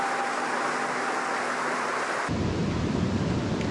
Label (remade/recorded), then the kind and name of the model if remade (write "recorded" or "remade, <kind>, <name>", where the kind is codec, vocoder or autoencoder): recorded